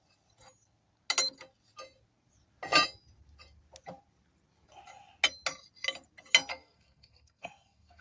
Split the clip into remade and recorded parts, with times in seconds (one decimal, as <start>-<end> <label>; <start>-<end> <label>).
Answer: 0.0-6.5 recorded; 6.5-8.0 remade